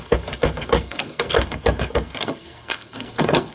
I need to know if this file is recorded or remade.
remade